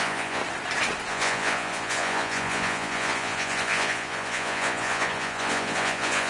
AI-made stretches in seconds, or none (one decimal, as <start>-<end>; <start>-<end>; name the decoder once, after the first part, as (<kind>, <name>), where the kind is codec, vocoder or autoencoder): 0.0-0.4 (vocoder, Vocos); 1.1-6.3